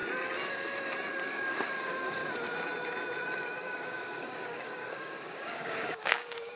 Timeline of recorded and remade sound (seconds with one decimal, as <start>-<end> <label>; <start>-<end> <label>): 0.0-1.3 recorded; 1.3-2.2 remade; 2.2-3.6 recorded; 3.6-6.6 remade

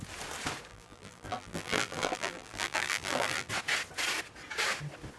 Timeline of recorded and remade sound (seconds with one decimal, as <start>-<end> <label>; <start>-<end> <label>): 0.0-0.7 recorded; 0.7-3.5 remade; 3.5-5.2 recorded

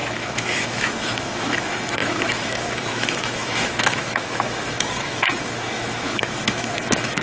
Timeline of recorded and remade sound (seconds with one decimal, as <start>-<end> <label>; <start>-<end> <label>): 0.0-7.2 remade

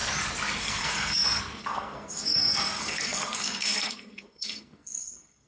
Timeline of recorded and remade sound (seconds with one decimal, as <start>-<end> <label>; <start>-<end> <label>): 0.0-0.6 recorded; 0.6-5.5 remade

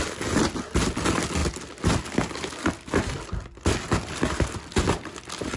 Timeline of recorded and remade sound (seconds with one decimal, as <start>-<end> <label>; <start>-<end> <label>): 0.0-5.6 recorded

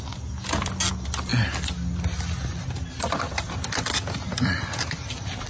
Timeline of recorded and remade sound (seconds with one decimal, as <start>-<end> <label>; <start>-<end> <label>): 0.0-5.5 recorded

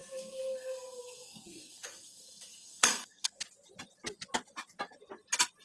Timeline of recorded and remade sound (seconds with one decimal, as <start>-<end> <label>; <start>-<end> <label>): 0.0-3.4 remade; 3.4-5.6 recorded

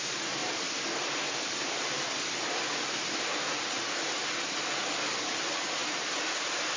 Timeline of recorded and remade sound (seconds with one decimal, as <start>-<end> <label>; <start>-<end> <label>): 0.0-6.8 recorded